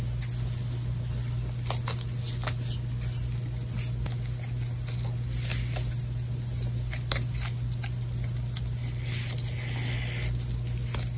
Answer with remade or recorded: recorded